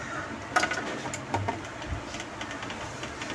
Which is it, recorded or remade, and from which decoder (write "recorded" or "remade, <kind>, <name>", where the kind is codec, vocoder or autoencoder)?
recorded